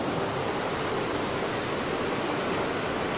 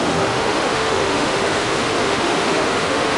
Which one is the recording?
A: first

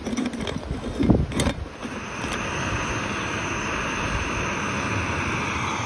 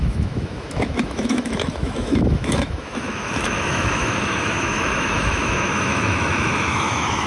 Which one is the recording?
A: first